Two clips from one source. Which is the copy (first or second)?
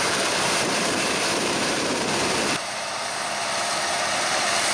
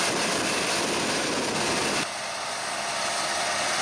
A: first